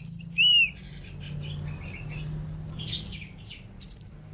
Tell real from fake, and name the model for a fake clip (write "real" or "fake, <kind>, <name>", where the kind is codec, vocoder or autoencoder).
real